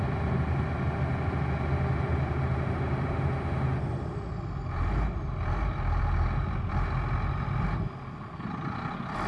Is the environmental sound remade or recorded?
recorded